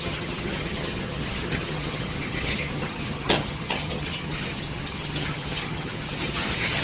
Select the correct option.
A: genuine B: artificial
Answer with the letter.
B